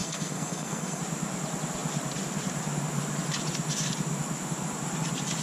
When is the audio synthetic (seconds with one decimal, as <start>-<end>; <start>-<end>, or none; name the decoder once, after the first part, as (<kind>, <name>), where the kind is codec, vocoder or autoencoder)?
0.0-1.0 (codec, SNAC)